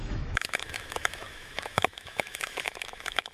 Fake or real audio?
fake